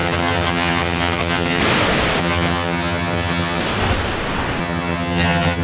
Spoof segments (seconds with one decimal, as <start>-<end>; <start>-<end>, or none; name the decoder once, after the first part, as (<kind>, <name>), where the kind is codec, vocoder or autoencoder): 0.0-1.6 (vocoder, HiFi-GAN); 2.2-3.6; 4.6-5.6